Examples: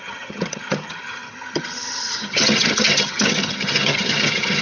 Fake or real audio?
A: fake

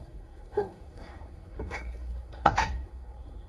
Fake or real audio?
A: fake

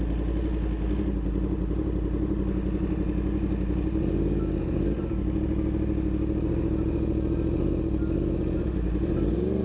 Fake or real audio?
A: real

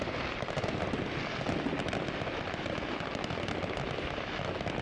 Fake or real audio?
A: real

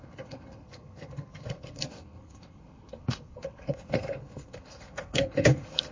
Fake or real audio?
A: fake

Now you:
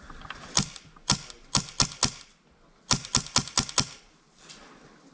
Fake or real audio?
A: real